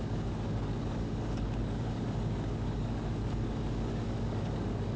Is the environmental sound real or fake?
fake